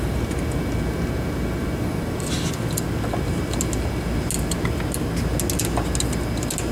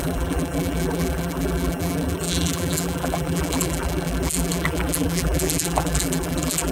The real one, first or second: first